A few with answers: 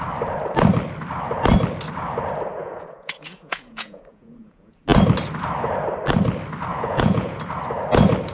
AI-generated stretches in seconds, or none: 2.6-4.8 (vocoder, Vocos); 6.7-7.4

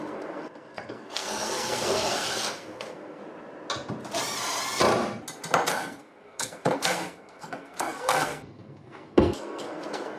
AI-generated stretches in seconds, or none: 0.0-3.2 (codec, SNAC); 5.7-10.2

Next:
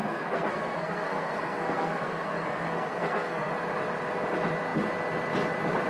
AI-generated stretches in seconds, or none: 0.0-3.5 (codec, SNAC)

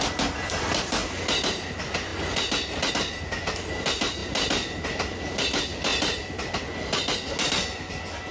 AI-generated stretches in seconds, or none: none